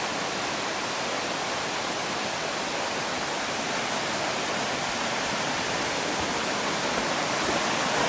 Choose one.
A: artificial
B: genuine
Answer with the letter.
B